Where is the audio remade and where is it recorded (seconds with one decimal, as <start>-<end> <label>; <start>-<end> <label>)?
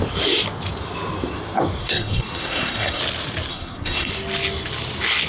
0.0-1.8 recorded; 1.8-3.0 remade; 3.0-3.5 recorded; 3.5-4.1 remade; 4.1-5.3 recorded